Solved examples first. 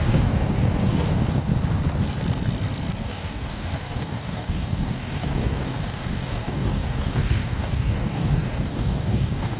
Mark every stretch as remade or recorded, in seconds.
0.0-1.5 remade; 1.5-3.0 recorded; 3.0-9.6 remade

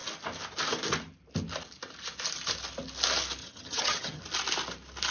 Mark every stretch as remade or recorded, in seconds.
0.0-3.4 recorded; 3.4-4.2 remade; 4.2-5.1 recorded

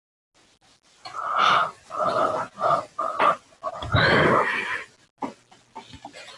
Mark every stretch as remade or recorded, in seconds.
0.0-6.4 recorded

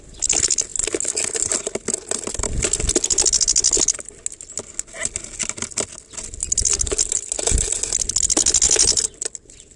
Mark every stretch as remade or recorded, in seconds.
0.0-9.8 recorded

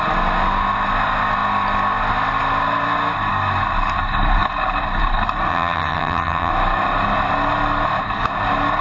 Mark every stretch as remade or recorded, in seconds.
0.0-5.5 recorded; 5.5-6.5 remade; 6.5-8.8 recorded